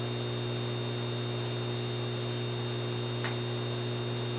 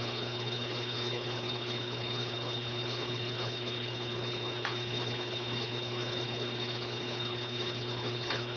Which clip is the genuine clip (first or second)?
first